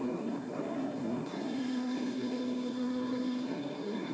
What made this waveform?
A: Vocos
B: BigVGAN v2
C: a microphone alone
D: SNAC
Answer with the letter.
D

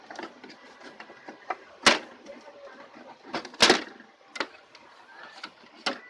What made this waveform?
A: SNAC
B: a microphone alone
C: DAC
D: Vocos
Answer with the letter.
B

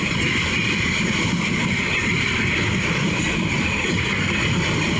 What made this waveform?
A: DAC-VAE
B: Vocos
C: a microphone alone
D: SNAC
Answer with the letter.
C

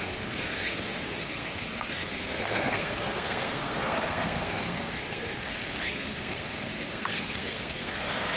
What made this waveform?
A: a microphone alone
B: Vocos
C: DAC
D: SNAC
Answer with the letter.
D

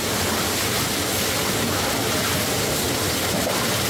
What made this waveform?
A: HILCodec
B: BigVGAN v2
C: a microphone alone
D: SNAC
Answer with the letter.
C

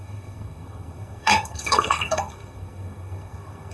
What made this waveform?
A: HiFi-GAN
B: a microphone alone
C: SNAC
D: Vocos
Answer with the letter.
C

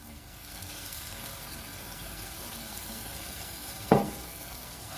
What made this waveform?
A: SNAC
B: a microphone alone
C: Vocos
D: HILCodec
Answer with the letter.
A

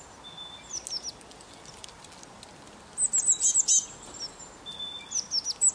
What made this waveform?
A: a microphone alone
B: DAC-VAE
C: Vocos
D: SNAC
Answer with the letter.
A